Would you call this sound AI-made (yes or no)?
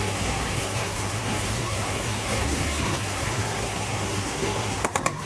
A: yes